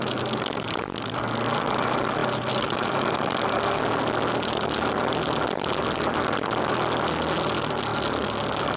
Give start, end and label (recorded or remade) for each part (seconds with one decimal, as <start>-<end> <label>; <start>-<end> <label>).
0.0-8.8 recorded